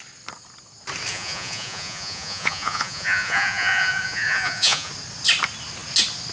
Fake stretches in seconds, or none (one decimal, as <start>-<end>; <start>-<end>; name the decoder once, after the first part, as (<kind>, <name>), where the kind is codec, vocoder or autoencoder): 1.1-4.9 (vocoder, Vocos)